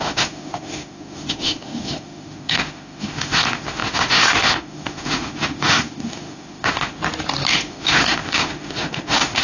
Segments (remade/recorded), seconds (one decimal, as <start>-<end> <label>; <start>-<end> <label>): 0.0-7.0 remade; 7.0-7.5 recorded; 7.5-9.4 remade